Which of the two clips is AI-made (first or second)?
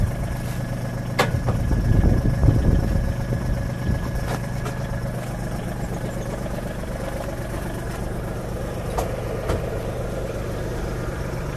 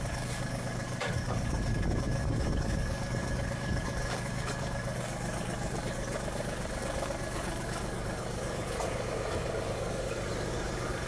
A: second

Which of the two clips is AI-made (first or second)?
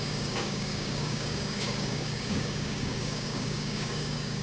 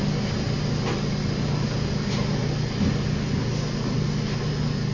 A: first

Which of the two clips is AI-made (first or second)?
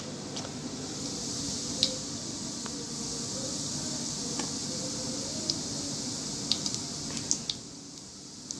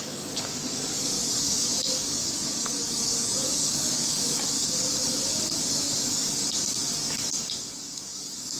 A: second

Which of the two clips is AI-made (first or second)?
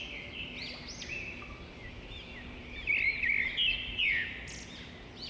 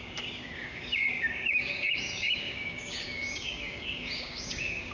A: second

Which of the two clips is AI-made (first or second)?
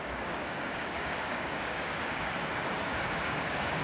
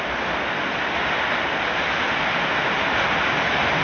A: first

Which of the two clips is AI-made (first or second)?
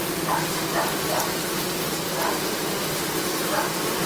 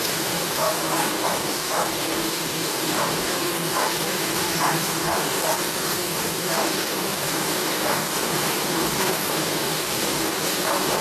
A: second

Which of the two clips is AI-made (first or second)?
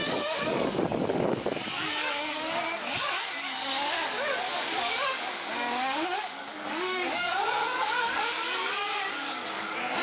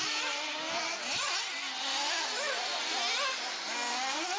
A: first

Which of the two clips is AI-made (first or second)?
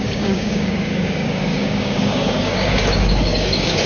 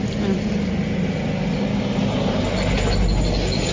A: first